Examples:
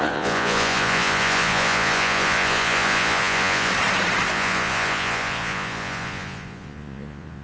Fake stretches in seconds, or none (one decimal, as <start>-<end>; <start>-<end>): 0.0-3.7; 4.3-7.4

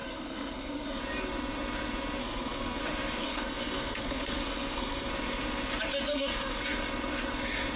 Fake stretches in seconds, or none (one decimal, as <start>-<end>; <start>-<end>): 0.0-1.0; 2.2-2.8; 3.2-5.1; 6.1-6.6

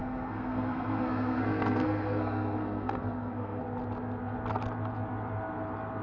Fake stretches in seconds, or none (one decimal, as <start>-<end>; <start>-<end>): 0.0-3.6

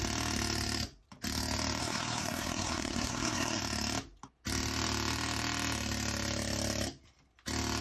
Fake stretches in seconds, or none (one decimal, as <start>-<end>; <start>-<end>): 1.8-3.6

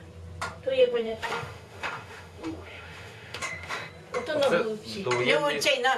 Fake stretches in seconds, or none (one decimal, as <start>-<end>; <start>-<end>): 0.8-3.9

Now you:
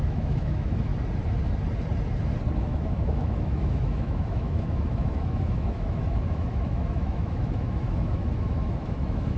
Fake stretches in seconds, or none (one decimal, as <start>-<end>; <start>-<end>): 0.0-0.9; 2.6-9.4

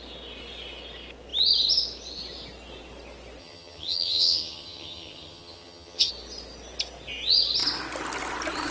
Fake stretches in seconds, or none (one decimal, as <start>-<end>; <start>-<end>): 3.4-6.1

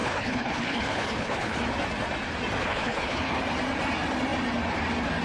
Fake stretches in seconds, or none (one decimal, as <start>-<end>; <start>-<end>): 0.0-1.6; 2.6-3.4